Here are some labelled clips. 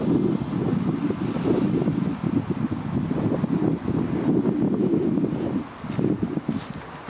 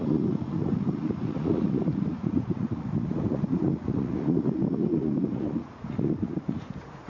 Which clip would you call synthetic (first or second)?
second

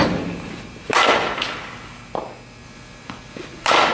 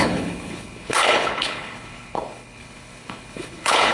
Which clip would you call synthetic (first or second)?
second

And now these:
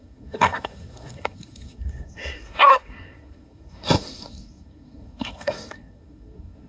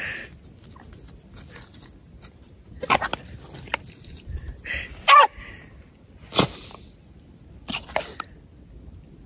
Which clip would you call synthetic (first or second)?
first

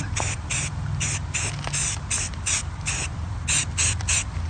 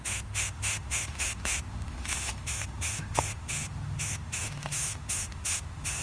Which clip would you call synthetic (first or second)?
second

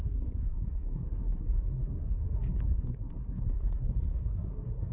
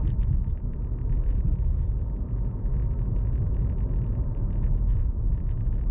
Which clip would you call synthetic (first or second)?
first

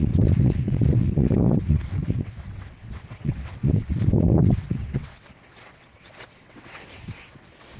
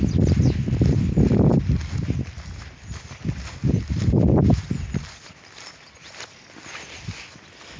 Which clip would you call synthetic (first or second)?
first